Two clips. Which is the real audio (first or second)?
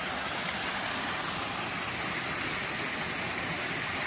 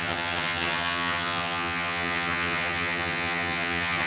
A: first